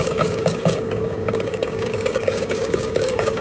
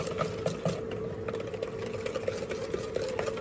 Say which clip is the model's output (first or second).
first